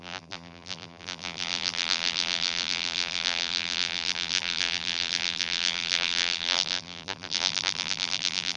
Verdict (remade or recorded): remade